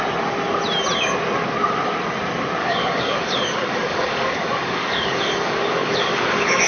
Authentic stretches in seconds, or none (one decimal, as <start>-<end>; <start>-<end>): 0.0-2.6